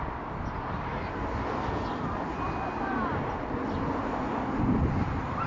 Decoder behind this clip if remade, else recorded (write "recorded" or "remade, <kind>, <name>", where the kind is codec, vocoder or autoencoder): recorded